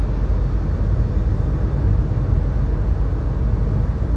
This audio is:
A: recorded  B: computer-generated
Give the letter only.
A